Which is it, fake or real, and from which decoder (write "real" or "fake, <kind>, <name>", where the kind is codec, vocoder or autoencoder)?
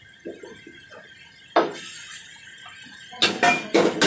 real